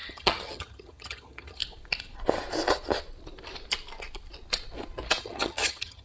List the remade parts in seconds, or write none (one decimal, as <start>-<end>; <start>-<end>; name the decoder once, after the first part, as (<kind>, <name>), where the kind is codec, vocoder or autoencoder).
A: 0.0-1.6 (vocoder, HiFi-GAN); 5.2-6.0